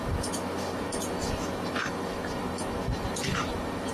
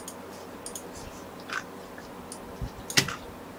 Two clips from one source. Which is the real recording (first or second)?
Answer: second